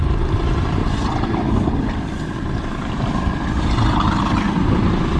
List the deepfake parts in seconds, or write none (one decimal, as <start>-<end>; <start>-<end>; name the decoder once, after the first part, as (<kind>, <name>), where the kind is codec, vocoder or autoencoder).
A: 0.0-0.8 (vocoder, BigVGAN v2); 3.2-5.2